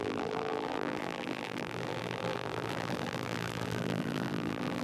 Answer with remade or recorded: remade